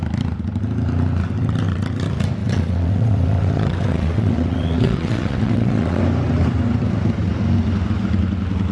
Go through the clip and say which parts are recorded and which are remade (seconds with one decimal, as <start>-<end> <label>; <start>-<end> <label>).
0.0-2.4 recorded; 2.4-6.0 remade; 6.0-8.7 recorded